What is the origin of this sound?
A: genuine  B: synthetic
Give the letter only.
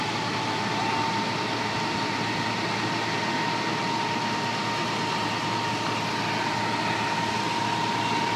A